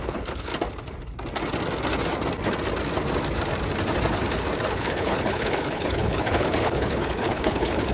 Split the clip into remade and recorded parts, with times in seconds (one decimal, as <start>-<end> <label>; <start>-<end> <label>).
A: 0.0-0.5 remade; 0.5-4.7 recorded; 4.7-7.9 remade